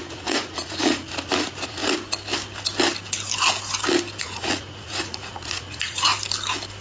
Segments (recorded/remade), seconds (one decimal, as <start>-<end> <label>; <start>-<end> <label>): 0.0-1.8 remade; 1.8-4.2 recorded; 4.2-6.1 remade; 6.1-6.8 recorded